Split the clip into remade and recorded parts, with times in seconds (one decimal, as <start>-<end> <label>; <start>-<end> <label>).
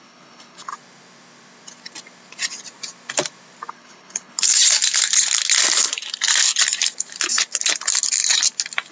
0.0-0.7 remade; 0.7-3.7 recorded; 3.7-4.6 remade; 4.6-8.9 recorded